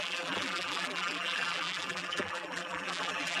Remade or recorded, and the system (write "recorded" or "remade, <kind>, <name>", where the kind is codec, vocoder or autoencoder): remade, vocoder, BigVGAN v2